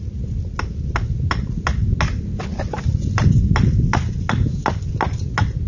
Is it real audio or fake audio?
real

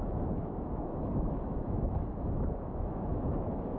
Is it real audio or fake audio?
fake